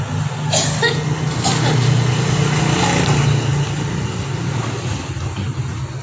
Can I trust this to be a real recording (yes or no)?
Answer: yes